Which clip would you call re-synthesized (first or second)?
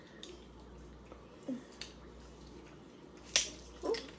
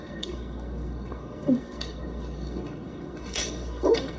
second